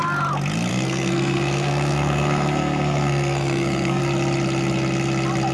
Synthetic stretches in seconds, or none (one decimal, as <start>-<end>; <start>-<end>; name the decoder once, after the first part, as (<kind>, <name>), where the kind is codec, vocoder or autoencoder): 0.7-4.0 (codec, SNAC)